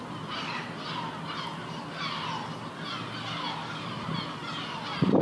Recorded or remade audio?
recorded